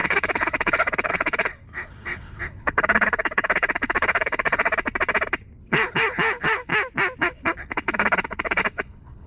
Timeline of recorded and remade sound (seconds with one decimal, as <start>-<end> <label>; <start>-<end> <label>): 0.0-4.7 remade; 4.7-5.6 recorded; 5.6-6.7 remade; 6.7-7.2 recorded; 7.2-9.3 remade